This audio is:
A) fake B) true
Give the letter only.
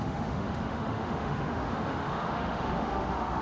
A